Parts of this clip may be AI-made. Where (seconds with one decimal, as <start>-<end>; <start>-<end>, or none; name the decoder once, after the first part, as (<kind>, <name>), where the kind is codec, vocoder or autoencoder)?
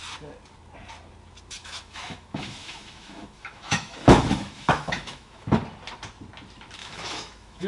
1.6-5.5 (autoencoder, DAC-VAE); 6.8-7.7